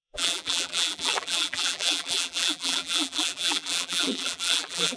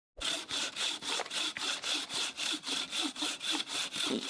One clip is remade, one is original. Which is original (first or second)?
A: second